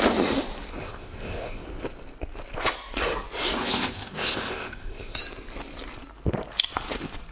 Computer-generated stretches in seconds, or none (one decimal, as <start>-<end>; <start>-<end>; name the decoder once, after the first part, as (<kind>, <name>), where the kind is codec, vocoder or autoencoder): 0.8-1.6 (codec, ZipCodec); 3.6-5.2